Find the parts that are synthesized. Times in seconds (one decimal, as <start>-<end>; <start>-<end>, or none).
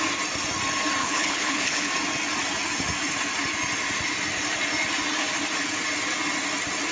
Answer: 1.0-1.9